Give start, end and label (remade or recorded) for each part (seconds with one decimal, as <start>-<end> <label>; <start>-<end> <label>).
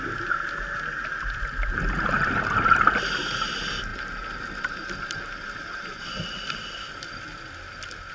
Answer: 0.0-8.1 recorded